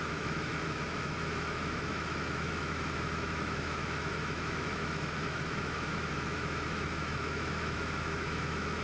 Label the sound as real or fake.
fake